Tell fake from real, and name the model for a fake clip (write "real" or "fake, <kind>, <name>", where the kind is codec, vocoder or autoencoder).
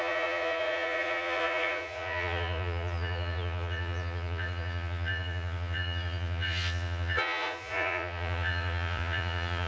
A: fake, vocoder, Vocos